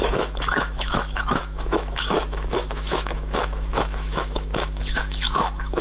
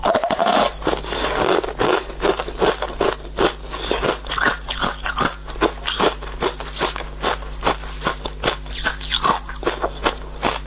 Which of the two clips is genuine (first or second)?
second